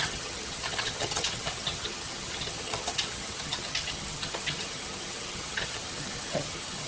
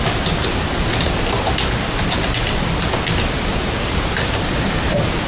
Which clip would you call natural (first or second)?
second